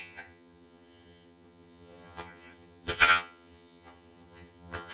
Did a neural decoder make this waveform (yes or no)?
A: yes